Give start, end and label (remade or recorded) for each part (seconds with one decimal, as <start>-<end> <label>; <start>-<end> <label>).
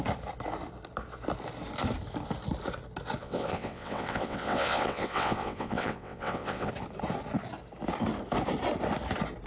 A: 0.0-3.2 recorded; 3.2-6.7 remade; 6.7-9.5 recorded